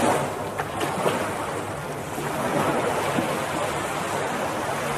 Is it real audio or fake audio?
real